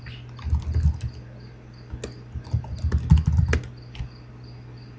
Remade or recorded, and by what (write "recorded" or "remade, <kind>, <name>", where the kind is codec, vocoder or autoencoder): recorded